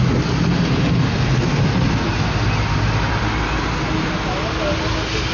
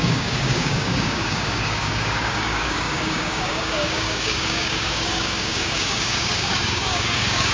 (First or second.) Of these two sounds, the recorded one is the first